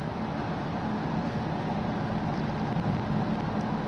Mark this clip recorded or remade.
recorded